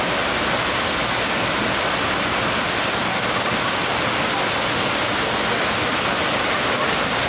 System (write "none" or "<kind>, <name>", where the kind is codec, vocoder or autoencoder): none